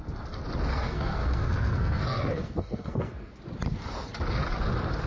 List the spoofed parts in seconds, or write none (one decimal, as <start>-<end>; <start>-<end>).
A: 0.7-3.3